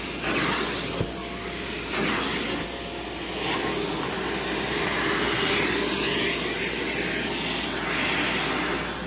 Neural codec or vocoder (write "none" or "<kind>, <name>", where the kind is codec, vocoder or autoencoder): none